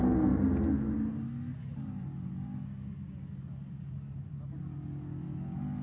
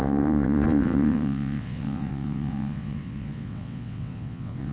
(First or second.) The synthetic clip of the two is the second